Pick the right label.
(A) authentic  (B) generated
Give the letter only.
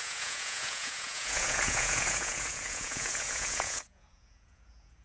B